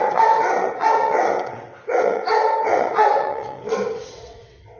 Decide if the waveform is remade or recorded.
remade